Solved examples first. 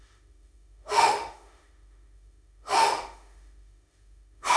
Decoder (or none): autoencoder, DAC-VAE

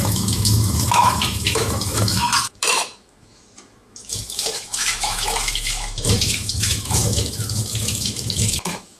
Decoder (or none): autoencoder, DAC-VAE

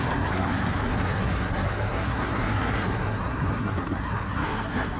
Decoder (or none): codec, SNAC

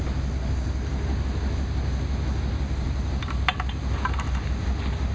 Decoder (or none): none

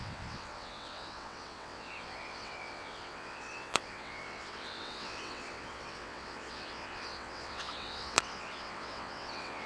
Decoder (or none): vocoder, WaveNeXt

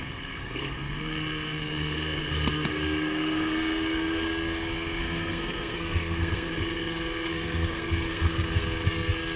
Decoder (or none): codec, SNAC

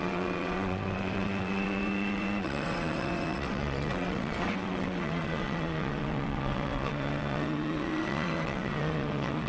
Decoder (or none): vocoder, WaveNeXt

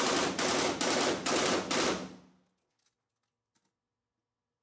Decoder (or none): none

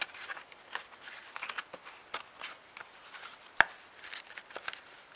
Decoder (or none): none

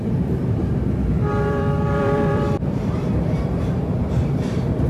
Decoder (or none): vocoder, BigVGAN v2